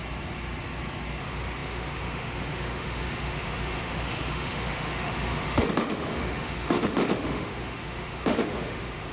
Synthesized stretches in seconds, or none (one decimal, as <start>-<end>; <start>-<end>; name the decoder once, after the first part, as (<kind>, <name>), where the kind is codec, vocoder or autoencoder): 1.2-9.1 (autoencoder, DAC-VAE)